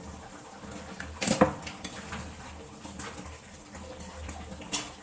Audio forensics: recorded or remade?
recorded